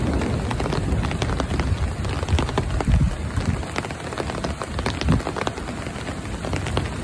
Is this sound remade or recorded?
recorded